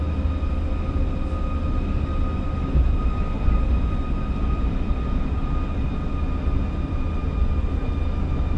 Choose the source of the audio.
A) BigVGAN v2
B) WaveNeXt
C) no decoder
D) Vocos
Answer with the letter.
C